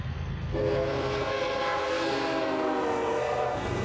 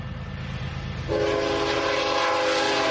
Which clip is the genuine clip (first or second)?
second